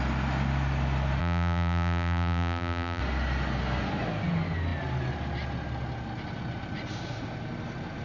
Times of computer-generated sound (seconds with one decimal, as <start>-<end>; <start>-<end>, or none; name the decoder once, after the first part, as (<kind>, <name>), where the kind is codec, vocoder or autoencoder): 1.2-3.0 (vocoder, BigVGAN v2)